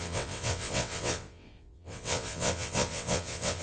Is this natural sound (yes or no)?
no